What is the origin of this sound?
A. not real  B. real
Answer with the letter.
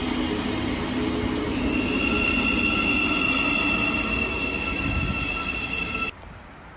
B